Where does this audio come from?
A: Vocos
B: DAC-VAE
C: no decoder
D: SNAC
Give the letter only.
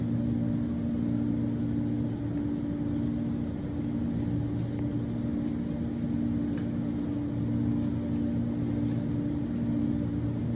C